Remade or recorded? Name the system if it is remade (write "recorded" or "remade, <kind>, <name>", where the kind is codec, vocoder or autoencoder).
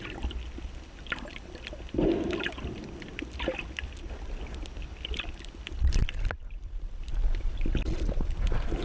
recorded